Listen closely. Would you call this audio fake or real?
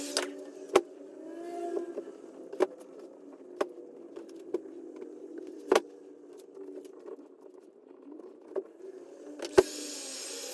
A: real